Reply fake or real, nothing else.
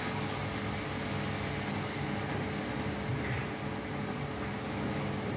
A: real